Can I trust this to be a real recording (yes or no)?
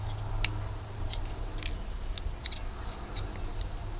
yes